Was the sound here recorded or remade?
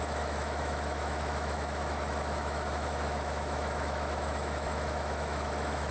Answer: remade